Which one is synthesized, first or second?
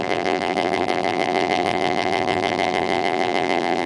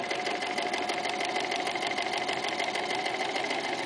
first